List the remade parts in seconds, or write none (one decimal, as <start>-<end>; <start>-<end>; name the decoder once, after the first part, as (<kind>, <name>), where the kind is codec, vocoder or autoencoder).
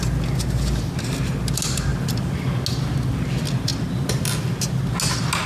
none